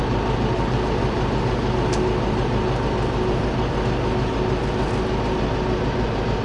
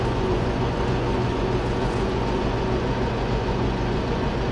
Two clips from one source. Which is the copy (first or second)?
second